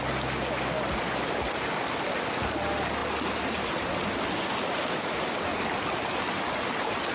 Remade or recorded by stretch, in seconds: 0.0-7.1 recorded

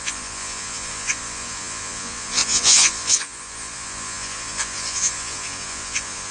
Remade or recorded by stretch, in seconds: 0.0-6.3 remade

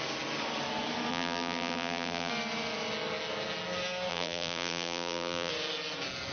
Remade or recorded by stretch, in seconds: 0.0-1.1 recorded; 1.1-2.3 remade; 2.3-4.1 recorded; 4.1-5.5 remade; 5.5-6.3 recorded

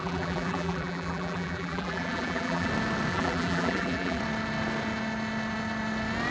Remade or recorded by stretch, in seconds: 0.0-2.7 remade; 2.7-3.1 recorded; 3.1-4.2 remade; 4.2-6.3 recorded

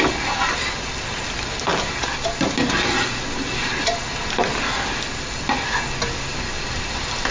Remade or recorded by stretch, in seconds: 0.0-7.3 recorded

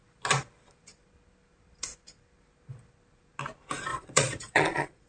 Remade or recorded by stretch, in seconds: 0.0-3.9 recorded; 3.9-5.1 remade

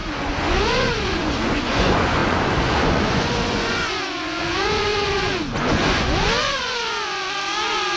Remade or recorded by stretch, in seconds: 0.0-8.0 remade